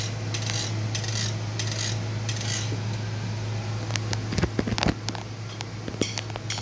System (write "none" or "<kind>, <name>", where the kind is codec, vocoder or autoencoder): none